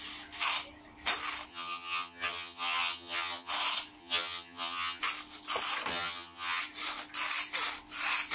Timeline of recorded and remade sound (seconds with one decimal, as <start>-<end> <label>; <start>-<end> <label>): 0.0-1.5 recorded; 1.5-3.5 remade; 3.5-4.0 recorded; 4.0-5.0 remade; 5.0-5.9 recorded; 5.9-6.6 remade; 6.6-8.3 recorded